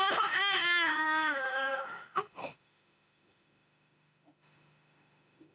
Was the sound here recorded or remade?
remade